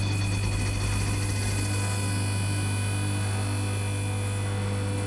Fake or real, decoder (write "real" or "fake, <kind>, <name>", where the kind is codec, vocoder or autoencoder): real